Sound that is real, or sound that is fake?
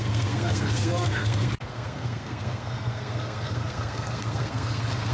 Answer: fake